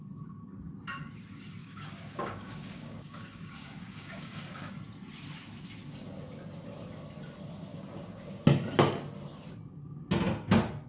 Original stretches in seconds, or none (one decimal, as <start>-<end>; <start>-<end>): 0.0-1.6; 4.7-7.7; 8.3-10.9